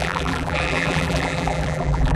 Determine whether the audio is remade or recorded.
remade